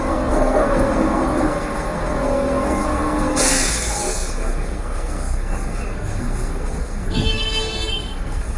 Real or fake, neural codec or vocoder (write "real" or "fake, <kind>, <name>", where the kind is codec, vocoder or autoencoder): fake, codec, SNAC